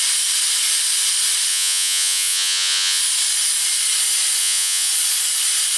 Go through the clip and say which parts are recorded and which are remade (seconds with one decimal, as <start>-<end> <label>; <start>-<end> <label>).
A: 0.0-1.5 recorded; 1.5-3.0 remade; 3.0-4.4 recorded; 4.4-4.9 remade; 4.9-5.8 recorded